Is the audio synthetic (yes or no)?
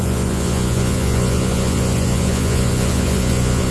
yes